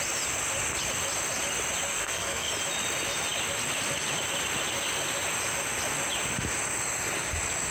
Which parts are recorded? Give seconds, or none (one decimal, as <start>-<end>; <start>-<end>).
0.0-1.9; 2.5-7.7